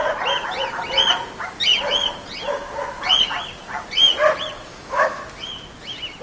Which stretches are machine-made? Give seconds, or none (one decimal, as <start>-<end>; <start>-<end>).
4.7-5.2